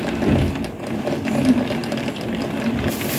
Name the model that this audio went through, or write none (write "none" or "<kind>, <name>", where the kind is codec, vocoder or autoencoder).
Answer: none